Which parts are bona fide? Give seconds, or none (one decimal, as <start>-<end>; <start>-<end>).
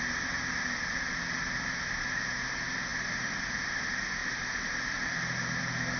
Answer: 0.0-6.0